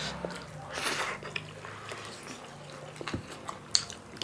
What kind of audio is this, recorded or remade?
recorded